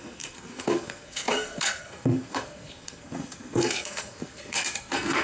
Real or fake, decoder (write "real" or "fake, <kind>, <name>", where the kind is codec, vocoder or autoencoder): fake, codec, SNAC